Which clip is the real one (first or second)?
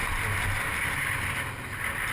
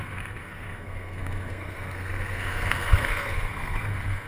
first